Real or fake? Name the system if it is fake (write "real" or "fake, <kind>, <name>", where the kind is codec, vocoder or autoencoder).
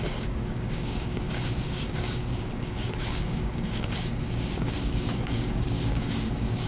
fake, codec, DAC